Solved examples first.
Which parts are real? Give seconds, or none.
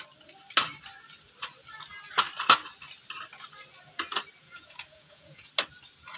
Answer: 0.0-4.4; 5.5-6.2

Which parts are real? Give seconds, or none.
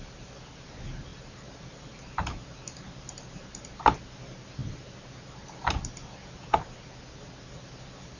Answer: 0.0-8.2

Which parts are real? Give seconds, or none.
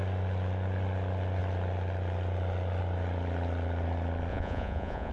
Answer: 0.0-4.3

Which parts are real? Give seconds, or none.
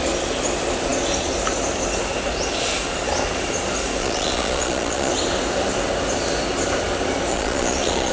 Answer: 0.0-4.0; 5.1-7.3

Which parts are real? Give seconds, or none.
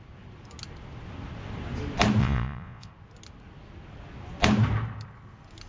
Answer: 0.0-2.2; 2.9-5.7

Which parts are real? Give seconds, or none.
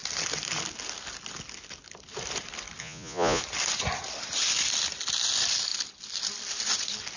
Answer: 0.0-2.8; 3.4-7.2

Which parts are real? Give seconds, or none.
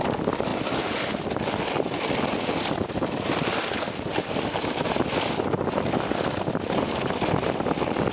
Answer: 0.0-8.1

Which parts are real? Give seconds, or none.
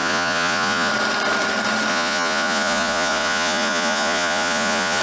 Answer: 0.9-1.9